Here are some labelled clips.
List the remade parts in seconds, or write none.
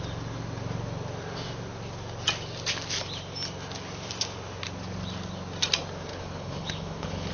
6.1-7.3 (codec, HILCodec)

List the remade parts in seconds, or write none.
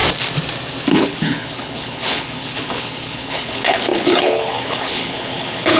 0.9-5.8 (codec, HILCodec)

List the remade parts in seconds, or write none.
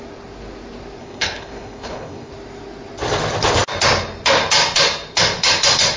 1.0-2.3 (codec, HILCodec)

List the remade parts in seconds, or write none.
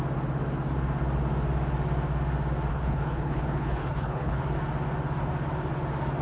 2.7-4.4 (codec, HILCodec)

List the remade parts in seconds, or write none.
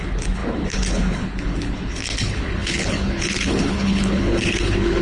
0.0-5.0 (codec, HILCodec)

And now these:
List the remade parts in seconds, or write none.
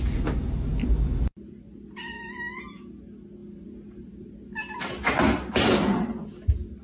none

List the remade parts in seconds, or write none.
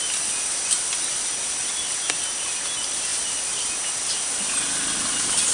none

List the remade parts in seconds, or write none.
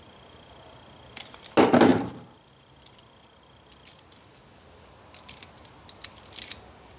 none